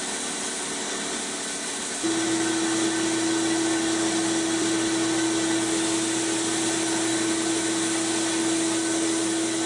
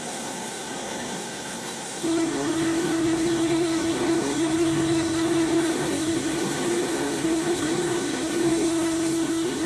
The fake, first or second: second